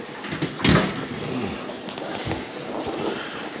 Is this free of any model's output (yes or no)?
yes